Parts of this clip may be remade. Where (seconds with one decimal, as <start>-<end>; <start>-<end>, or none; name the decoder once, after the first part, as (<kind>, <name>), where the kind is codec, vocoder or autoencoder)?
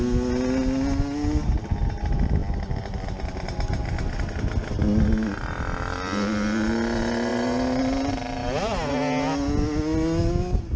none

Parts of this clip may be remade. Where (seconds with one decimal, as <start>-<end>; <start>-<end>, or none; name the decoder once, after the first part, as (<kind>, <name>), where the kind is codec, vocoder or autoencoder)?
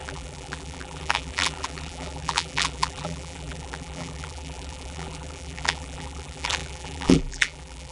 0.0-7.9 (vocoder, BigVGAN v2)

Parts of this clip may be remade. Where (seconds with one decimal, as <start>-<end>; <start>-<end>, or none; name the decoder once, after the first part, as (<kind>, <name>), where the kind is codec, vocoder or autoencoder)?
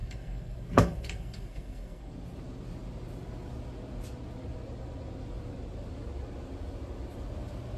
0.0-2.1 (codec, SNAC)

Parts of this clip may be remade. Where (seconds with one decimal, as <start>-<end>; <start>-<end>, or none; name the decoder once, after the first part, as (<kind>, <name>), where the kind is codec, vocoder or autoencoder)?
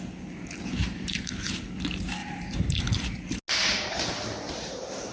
0.8-1.7 (vocoder, BigVGAN v2); 2.2-2.8; 3.6-4.5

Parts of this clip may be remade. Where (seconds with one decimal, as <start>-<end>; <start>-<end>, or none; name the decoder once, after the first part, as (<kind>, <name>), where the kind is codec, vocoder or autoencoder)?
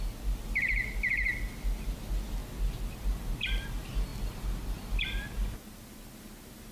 none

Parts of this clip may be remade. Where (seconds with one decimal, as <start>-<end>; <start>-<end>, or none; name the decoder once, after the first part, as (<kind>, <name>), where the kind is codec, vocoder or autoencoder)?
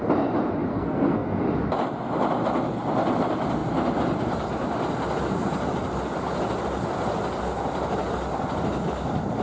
0.7-1.4 (codec, SNAC)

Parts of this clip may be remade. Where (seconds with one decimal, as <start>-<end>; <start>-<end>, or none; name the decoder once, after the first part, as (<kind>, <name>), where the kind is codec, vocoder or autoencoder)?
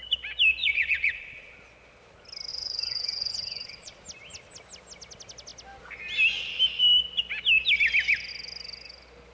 0.6-1.5 (vocoder, Vocos); 2.5-4.0